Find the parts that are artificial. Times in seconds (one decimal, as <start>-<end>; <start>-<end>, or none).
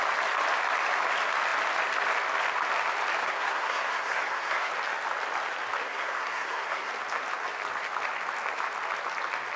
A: 3.2-4.7; 5.8-6.9